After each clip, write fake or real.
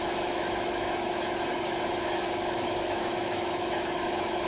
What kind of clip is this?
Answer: fake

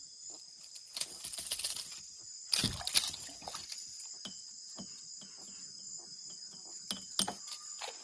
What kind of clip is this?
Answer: real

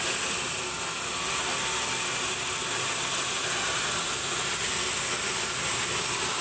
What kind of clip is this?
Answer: real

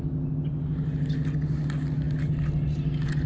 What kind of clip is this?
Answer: real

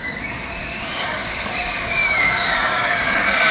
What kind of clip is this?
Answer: fake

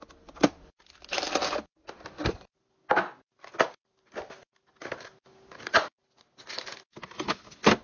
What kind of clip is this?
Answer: real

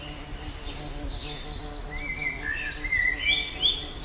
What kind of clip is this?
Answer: real